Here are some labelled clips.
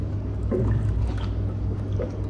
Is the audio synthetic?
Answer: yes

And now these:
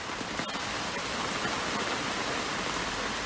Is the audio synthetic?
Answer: no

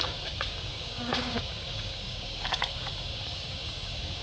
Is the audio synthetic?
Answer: yes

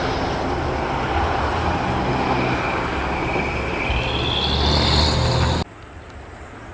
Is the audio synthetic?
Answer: no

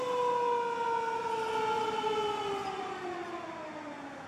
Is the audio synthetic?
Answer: no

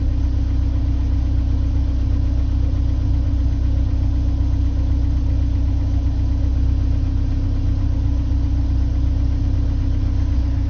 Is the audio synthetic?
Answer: no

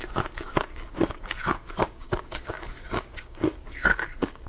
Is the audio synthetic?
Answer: yes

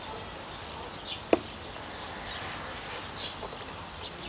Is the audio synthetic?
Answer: no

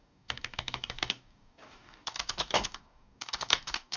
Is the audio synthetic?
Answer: yes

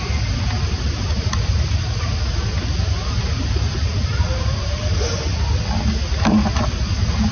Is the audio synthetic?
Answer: no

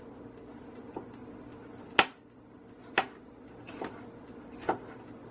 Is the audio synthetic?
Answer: no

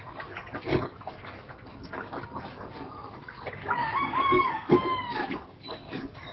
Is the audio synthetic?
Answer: yes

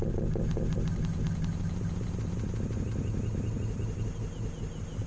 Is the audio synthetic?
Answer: no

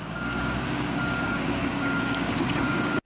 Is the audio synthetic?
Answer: yes